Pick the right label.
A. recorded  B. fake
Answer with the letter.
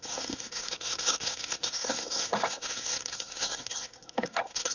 B